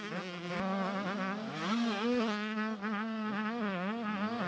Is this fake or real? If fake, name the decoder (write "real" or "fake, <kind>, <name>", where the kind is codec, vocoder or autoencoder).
real